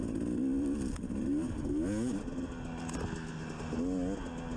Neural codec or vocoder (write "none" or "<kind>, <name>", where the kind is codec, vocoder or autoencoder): none